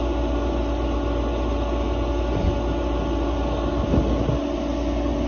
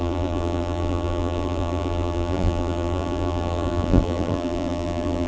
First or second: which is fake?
second